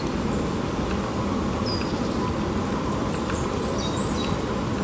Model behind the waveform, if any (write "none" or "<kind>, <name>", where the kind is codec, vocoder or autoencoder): none